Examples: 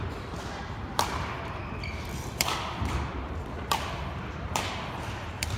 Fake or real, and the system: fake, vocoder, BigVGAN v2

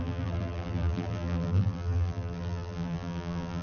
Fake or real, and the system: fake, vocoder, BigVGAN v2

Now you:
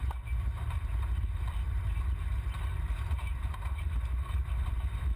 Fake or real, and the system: fake, vocoder, BigVGAN v2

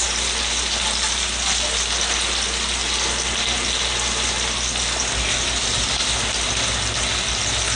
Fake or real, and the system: real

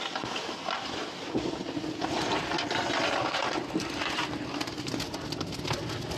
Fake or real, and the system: real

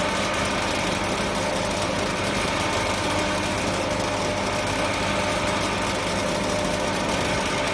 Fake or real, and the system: real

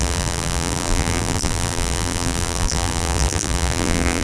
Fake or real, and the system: fake, vocoder, BigVGAN v2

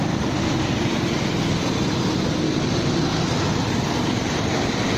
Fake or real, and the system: real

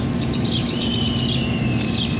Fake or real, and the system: fake, vocoder, BigVGAN v2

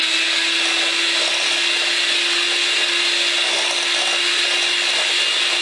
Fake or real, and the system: real